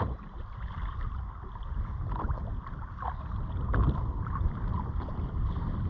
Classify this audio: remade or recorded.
recorded